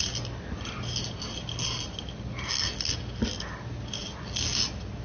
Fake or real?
real